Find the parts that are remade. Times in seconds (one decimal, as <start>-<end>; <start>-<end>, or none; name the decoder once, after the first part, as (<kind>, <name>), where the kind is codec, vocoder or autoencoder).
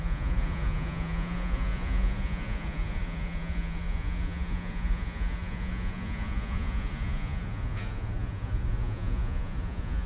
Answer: 0.0-10.1 (vocoder, Vocos)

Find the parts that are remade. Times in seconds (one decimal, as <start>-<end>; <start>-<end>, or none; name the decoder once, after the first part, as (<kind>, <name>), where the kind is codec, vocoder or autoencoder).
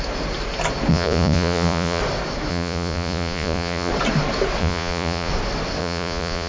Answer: 0.9-2.0 (vocoder, Vocos); 2.5-3.9; 4.6-5.3; 5.8-6.5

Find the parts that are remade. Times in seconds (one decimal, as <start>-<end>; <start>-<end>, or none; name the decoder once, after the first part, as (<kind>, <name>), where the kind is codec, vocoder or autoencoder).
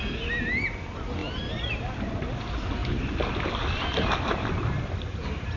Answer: none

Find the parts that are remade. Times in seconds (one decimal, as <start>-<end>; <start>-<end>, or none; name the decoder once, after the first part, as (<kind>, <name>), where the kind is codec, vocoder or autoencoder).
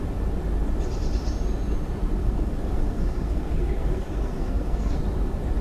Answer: 2.2-5.0 (codec, SNAC)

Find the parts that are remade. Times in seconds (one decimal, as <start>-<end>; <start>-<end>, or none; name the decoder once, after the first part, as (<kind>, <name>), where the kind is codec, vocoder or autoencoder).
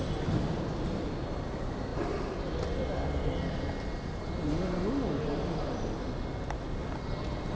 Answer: none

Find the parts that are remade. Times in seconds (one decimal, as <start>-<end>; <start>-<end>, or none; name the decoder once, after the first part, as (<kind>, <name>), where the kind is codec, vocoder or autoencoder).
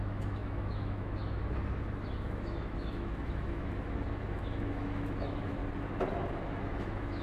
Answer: 0.0-5.6 (autoencoder, DAC-VAE); 6.3-7.2